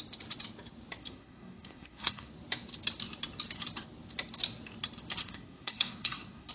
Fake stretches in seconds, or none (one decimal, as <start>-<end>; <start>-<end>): 1.0-2.3; 5.2-6.5

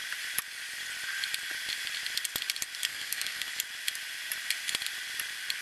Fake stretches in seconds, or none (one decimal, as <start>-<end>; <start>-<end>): 2.9-3.5

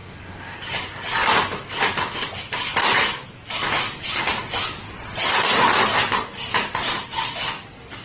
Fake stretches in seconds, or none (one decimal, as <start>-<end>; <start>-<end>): 0.0-0.6

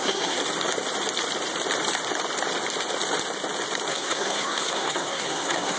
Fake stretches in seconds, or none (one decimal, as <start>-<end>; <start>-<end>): 0.0-0.4; 3.9-5.8

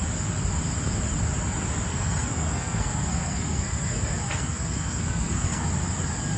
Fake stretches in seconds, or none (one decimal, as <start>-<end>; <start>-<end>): 1.9-5.7

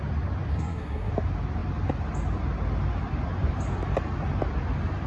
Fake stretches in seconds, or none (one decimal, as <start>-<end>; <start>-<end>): 0.5-1.1

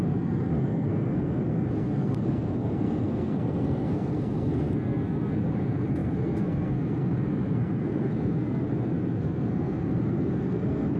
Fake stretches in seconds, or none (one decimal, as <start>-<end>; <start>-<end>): 0.0-11.0

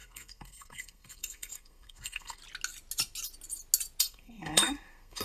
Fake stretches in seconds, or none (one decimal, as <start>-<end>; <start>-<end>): 0.0-2.4; 4.0-5.2